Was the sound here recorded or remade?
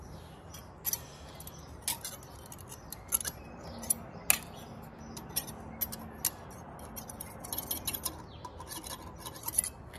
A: recorded